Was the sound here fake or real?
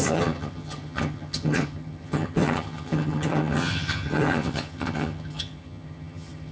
fake